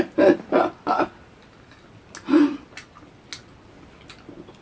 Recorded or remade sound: recorded